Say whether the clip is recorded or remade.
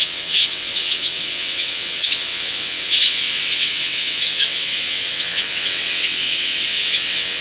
remade